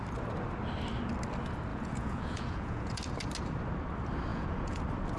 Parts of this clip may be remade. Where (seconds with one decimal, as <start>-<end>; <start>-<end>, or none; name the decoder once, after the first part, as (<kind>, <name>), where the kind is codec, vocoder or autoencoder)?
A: 1.7-3.0 (vocoder, Vocos); 4.3-4.8